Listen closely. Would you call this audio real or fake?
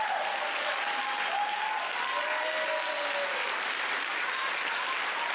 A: real